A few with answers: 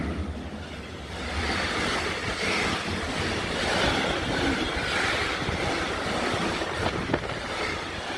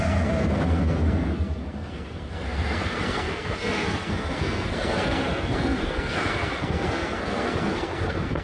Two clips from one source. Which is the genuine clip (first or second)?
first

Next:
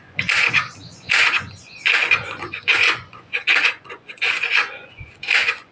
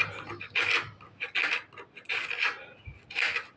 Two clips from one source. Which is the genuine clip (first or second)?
second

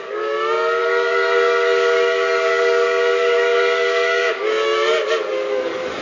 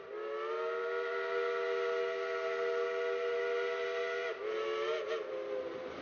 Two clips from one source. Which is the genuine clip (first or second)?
second